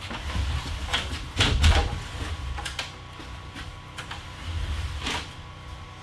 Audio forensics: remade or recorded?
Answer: recorded